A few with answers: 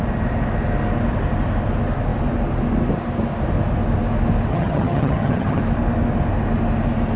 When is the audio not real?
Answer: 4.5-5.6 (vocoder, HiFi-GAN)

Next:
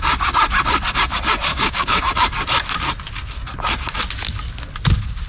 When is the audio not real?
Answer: 1.5-2.0 (codec, DAC)

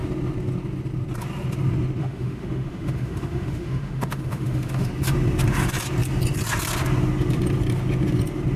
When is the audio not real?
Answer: 2.0-4.9 (autoencoder, DAC-VAE)

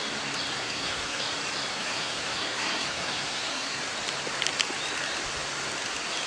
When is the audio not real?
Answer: 0.5-1.2 (codec, SNAC); 1.7-3.8

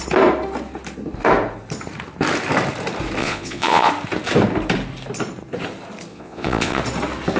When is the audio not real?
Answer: 3.2-3.9 (vocoder, Vocos); 6.1-6.8

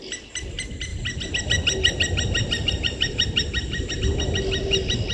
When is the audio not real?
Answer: none

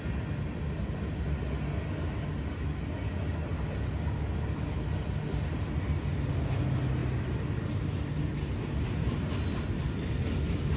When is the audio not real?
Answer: none